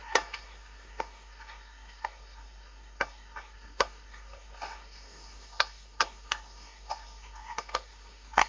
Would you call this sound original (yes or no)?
no